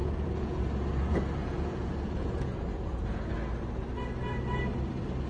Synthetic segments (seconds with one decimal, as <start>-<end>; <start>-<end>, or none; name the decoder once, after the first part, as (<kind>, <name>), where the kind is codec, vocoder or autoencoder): 0.0-0.6 (vocoder, Vocos); 1.4-3.3